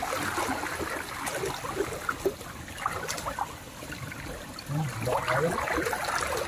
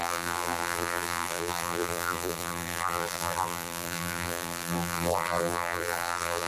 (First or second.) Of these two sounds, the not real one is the second